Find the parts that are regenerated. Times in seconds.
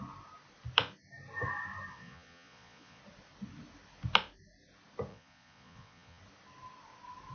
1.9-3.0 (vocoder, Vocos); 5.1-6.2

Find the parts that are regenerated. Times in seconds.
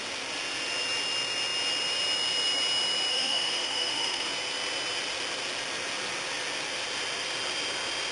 3.1-4.3 (autoencoder, DAC-VAE)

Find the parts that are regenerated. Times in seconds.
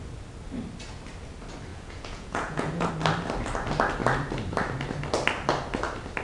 1.7-2.9 (vocoder, Vocos)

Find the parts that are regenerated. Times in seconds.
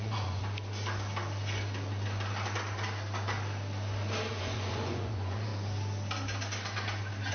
0.0-0.4 (vocoder, Vocos); 4.3-5.5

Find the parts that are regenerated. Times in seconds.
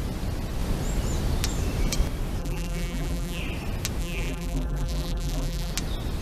2.4-3.4 (vocoder, BigVGAN v2); 4.0-5.7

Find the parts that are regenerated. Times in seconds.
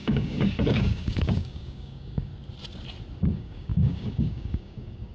0.0-2.3 (codec, DAC); 3.2-5.1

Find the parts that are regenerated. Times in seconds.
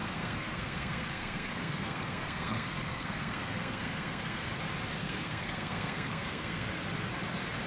0.0-4.6 (codec, SNAC); 5.0-6.7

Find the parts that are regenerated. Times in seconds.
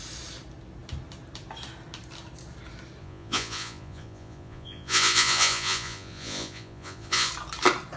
3.0-7.3 (vocoder, Vocos)